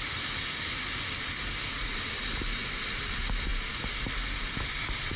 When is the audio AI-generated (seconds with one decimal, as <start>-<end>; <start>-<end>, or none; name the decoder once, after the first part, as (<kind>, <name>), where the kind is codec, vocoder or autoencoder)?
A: none